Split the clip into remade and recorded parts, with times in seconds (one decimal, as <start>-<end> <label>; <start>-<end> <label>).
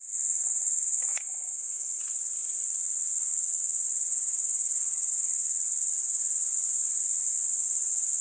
0.0-1.1 recorded; 1.1-2.0 remade; 2.0-8.2 recorded